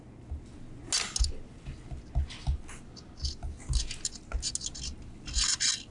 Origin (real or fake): real